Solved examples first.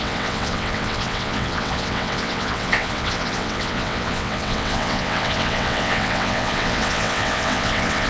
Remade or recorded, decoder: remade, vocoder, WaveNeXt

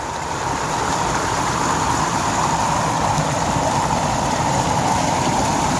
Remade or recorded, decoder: recorded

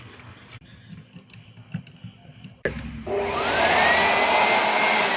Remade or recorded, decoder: recorded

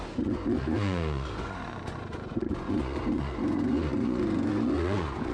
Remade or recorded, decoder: remade, vocoder, Vocos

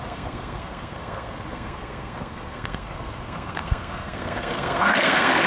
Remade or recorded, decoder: remade, codec, SNAC